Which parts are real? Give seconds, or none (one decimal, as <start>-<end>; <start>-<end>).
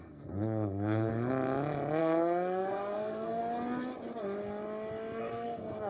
1.1-2.0; 3.4-5.2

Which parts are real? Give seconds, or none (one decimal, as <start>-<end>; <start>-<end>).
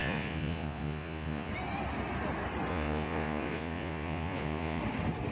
1.5-2.7; 4.8-5.3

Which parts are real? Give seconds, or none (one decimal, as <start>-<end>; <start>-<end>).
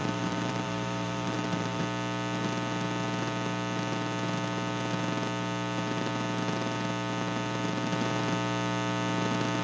1.8-9.6